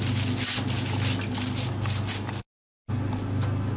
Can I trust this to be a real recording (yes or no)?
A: yes